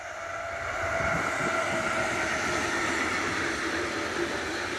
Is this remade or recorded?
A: recorded